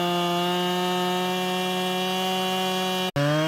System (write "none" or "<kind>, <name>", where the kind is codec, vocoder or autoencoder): none